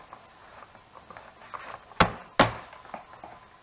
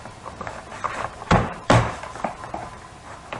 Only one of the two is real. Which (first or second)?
first